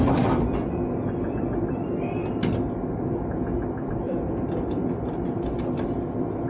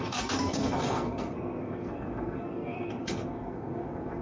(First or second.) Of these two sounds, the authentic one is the first